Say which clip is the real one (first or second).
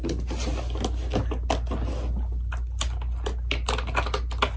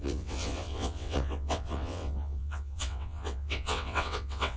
first